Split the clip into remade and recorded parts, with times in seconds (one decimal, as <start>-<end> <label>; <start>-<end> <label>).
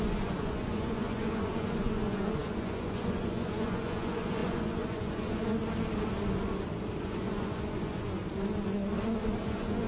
0.0-5.6 remade; 5.6-7.0 recorded; 7.0-8.2 remade; 8.2-9.4 recorded; 9.4-9.9 remade